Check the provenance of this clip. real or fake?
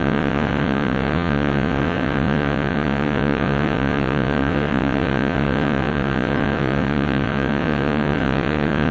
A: fake